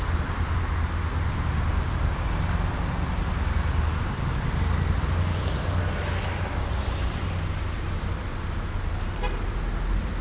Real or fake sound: real